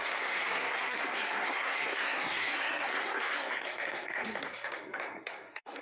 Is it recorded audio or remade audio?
remade